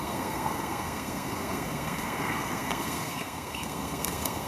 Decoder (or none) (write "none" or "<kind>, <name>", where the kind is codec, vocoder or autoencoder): codec, SNAC